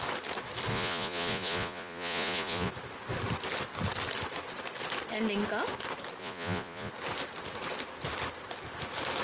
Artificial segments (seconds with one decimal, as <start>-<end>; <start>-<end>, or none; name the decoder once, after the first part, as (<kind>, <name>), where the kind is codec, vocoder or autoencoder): 0.7-2.7 (vocoder, Vocos); 6.2-6.9

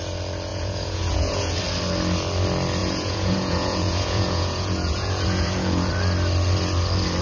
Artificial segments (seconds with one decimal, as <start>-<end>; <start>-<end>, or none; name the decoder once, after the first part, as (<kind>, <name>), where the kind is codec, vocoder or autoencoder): 0.5-1.6 (vocoder, Vocos); 2.8-5.9

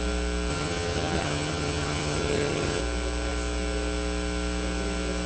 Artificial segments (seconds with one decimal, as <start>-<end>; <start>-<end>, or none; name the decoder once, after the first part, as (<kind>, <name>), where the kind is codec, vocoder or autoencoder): 0.5-2.8 (vocoder, HiFi-GAN)